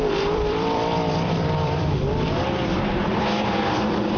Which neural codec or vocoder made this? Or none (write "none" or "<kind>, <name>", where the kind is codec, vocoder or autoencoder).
vocoder, BigVGAN v2